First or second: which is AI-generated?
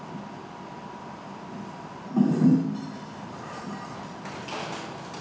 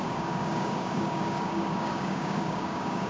second